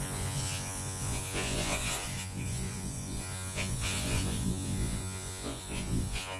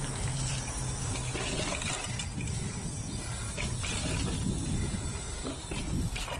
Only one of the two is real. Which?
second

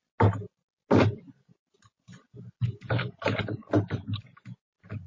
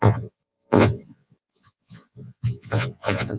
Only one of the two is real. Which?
first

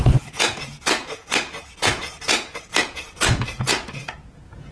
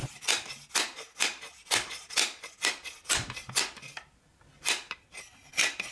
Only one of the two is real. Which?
second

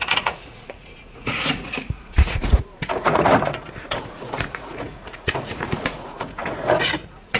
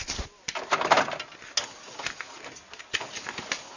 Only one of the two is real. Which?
second